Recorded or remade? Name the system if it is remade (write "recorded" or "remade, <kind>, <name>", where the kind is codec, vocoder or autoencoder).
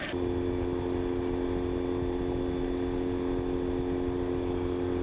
recorded